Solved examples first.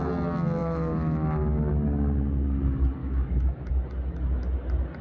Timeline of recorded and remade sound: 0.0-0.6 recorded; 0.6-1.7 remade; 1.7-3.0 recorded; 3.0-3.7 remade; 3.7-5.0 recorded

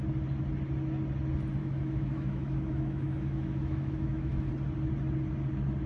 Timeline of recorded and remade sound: 0.0-1.6 recorded; 1.6-4.5 remade; 4.5-5.9 recorded